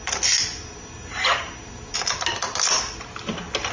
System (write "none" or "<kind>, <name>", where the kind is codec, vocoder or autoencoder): none